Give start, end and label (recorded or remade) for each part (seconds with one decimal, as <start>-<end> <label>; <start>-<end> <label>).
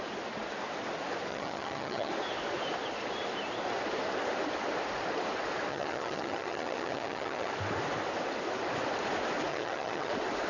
0.0-1.3 recorded; 1.3-2.1 remade; 2.1-5.7 recorded; 5.7-7.5 remade; 7.5-9.5 recorded; 9.5-10.1 remade; 10.1-10.5 recorded